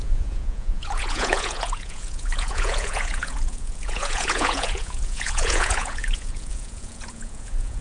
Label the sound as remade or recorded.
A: remade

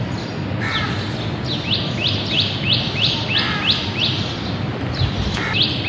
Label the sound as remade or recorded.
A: recorded